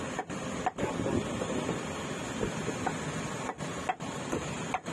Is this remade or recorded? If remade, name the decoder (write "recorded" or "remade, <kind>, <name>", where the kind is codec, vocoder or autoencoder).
recorded